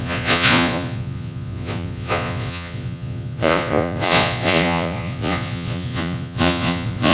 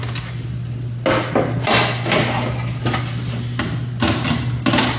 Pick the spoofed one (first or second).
first